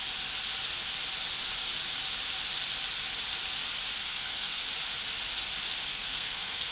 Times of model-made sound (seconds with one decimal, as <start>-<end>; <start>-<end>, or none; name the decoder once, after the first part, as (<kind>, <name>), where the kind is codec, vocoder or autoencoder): 4.0-4.6 (codec, SNAC); 5.9-6.7